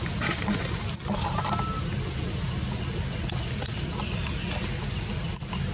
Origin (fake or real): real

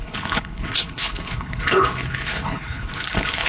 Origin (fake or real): fake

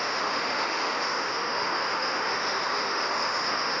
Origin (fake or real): fake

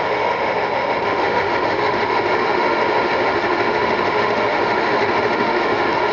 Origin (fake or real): fake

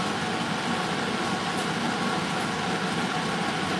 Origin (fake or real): real